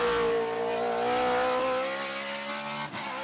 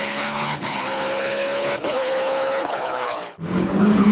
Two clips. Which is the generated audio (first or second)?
second